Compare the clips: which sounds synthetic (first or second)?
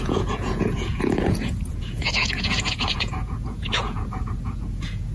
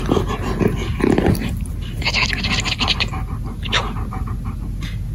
first